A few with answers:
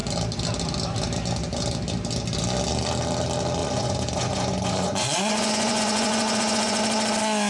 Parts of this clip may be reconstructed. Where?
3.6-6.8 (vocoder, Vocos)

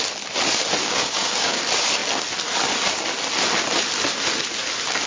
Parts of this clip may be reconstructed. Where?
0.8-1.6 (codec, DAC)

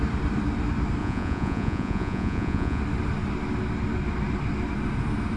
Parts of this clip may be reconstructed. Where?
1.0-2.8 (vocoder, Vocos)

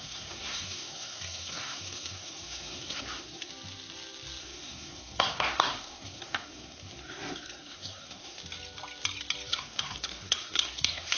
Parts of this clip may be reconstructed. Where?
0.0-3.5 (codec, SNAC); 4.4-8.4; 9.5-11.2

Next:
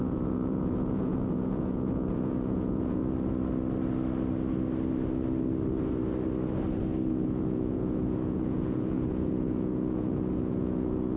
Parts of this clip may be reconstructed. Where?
0.0-3.0 (vocoder, Vocos); 7.1-11.2

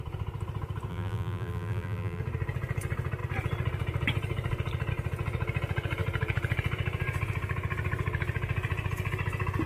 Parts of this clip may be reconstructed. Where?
0.9-2.2 (vocoder, BigVGAN v2)